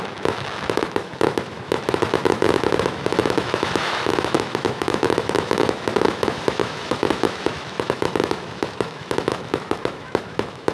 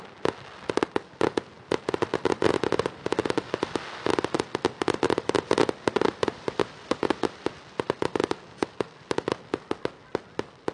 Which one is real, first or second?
second